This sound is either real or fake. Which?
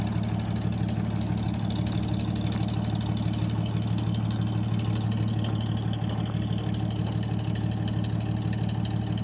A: real